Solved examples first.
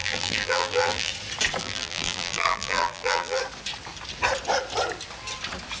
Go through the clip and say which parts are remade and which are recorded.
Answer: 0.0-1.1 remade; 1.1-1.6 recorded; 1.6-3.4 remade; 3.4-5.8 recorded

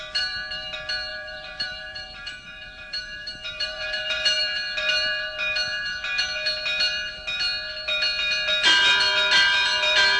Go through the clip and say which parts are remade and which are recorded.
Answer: 0.0-1.1 recorded; 1.1-4.4 remade; 4.4-10.2 recorded

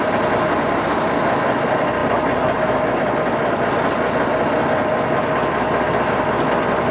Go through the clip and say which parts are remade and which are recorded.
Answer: 0.0-6.9 recorded

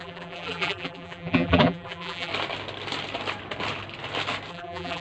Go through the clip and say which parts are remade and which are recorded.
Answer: 0.0-2.3 remade; 2.3-4.5 recorded; 4.5-5.0 remade